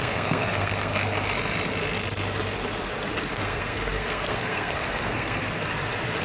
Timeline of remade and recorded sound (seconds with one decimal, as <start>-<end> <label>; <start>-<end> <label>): 0.0-0.9 remade; 0.9-3.3 recorded; 3.3-5.4 remade; 5.4-6.2 recorded